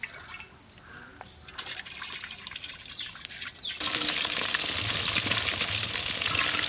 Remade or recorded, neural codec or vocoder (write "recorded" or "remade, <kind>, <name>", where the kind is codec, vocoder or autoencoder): recorded